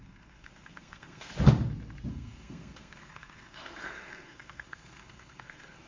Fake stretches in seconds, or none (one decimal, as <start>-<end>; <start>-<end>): 0.0-1.3; 2.1-5.9